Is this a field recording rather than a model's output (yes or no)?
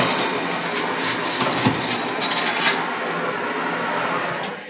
yes